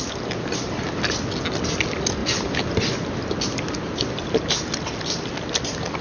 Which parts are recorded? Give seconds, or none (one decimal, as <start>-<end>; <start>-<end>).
0.0-6.0